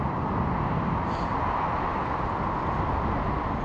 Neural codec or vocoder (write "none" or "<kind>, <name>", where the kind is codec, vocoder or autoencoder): none